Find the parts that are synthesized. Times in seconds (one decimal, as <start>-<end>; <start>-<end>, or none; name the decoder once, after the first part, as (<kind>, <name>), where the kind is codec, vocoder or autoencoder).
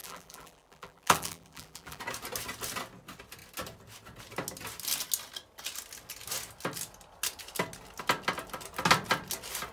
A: 0.0-2.0 (vocoder, BigVGAN v2)